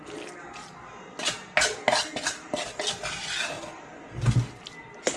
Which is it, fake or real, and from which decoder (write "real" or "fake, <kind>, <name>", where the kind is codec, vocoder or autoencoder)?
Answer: real